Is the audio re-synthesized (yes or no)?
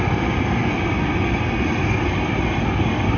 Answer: no